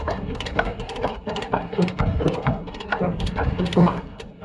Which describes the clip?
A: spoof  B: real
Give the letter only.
A